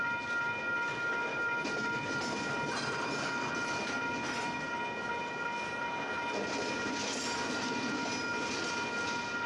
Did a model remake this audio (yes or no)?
no